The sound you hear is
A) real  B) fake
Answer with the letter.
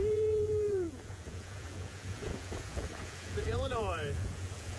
B